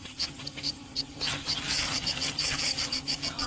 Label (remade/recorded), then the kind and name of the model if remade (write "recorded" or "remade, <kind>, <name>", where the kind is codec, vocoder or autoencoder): remade, vocoder, HiFi-GAN